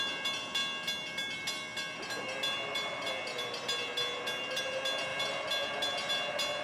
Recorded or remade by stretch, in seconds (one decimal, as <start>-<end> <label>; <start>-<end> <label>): 0.0-6.6 recorded